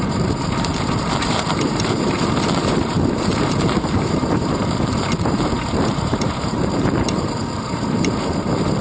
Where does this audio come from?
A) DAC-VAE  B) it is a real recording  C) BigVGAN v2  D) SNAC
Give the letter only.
C